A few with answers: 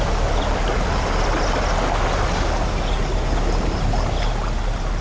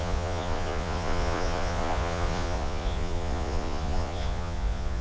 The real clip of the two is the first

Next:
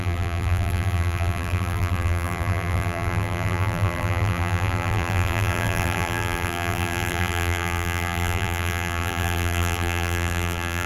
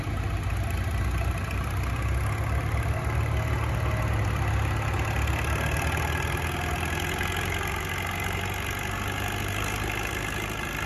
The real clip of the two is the second